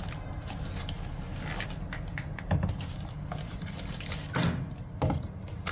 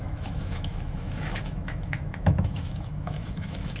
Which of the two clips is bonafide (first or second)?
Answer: first